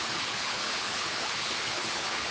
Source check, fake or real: fake